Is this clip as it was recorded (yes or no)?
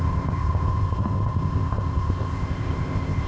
no